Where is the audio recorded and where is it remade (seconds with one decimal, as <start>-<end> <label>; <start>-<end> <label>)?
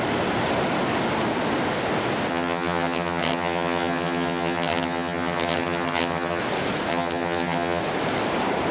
0.0-2.3 recorded; 2.3-6.4 remade; 6.4-6.9 recorded; 6.9-7.8 remade; 7.8-8.7 recorded